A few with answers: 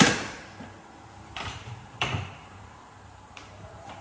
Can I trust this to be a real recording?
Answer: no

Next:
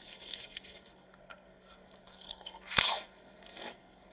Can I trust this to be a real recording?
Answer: no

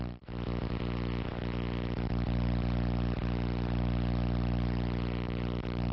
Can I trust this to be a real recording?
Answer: yes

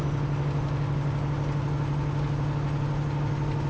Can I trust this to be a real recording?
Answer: yes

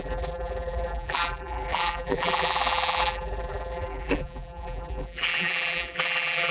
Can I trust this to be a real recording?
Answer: no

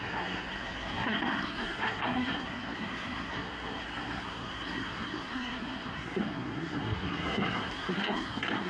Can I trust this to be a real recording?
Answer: no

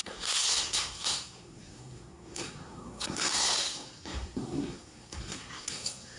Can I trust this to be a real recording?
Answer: no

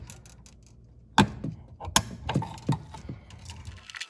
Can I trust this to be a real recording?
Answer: yes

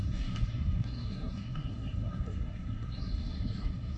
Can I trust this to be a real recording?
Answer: no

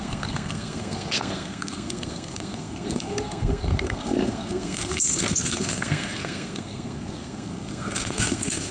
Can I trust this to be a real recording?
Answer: no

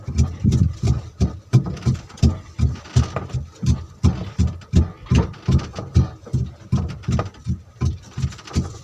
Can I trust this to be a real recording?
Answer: yes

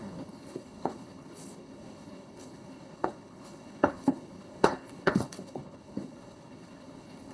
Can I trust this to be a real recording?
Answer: no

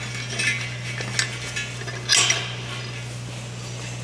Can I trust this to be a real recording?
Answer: yes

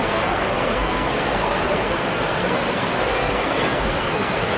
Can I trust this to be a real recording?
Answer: no